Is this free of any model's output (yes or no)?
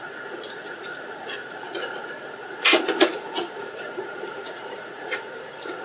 no